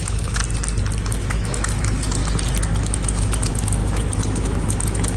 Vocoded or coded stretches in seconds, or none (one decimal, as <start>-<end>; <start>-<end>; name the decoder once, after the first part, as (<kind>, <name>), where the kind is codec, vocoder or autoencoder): 0.0-0.4 (autoencoder, DAC-VAE); 1.0-2.2; 2.8-5.2